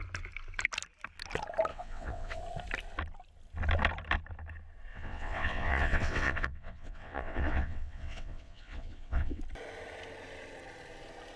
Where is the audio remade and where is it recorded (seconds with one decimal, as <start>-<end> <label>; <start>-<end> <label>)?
0.0-1.7 recorded; 1.7-2.4 remade; 2.4-4.9 recorded; 4.9-9.4 remade; 9.4-11.4 recorded